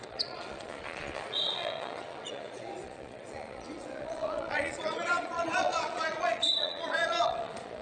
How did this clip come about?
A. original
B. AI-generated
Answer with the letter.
B